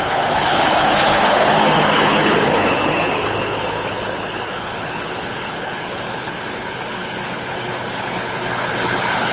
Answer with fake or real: fake